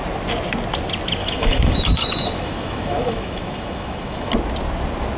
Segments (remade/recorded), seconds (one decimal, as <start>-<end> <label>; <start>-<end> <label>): 0.0-1.2 recorded; 1.2-4.3 remade; 4.3-5.2 recorded